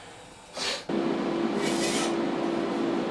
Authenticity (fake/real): real